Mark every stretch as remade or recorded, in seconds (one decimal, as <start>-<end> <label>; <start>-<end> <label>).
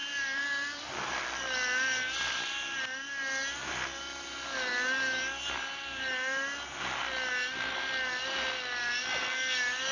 0.0-0.9 remade; 0.9-9.9 recorded